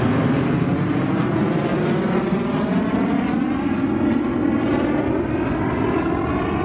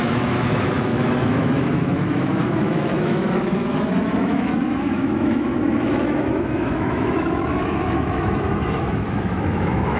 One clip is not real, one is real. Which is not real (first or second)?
second